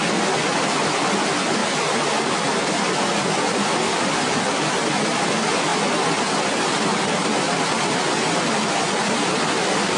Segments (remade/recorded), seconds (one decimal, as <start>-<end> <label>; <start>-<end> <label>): 0.0-10.0 recorded